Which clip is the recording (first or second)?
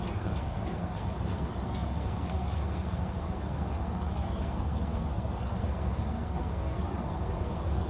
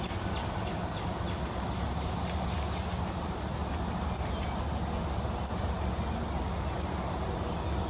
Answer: second